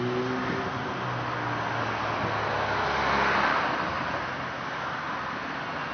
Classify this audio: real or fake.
real